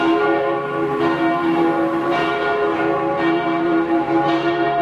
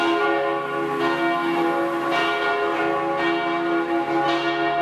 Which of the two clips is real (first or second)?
second